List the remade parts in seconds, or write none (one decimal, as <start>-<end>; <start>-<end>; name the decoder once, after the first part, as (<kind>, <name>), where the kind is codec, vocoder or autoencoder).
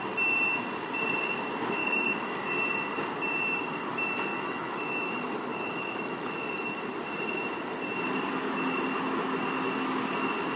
1.8-2.4 (autoencoder, DAC-VAE); 4.3-5.1; 5.5-6.8